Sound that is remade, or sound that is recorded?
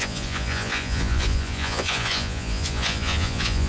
remade